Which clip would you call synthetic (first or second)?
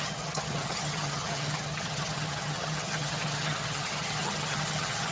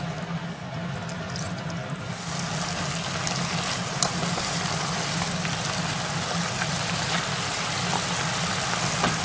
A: first